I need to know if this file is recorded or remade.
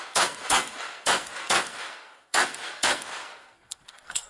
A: remade